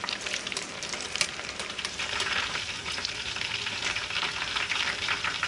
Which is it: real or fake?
fake